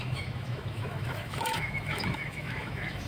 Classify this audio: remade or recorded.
remade